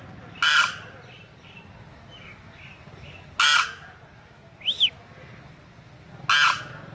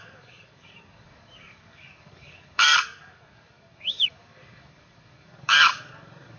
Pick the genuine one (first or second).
first